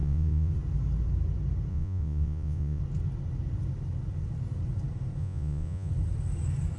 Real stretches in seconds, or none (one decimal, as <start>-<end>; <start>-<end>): 0.5-1.7; 2.8-5.2; 5.9-6.8